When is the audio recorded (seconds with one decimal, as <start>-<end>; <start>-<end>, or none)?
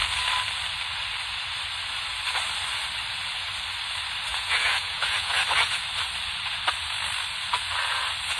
0.0-4.3; 5.4-8.4